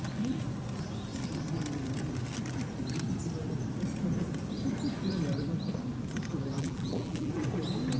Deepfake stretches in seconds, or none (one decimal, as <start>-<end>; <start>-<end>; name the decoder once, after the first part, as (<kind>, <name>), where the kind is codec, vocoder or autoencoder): 6.6-7.3 (vocoder, BigVGAN v2)